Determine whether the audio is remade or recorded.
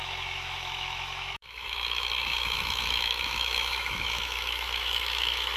remade